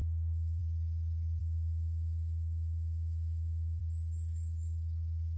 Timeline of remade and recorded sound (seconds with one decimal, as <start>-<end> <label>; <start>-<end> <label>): 0.0-0.6 remade; 0.6-1.4 recorded; 1.4-3.8 remade; 3.8-5.4 recorded

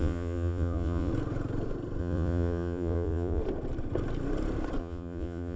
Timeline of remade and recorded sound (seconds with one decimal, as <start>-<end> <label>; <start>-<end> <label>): 0.0-1.1 remade; 1.1-2.0 recorded; 2.0-3.4 remade; 3.4-4.8 recorded; 4.8-5.6 remade

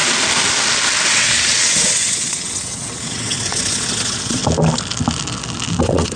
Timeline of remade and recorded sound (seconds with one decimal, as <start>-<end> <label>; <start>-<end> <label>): 0.0-1.1 recorded; 1.1-4.4 remade; 4.4-5.8 recorded; 5.8-6.2 remade